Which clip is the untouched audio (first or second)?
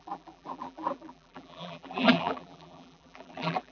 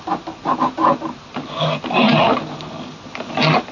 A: second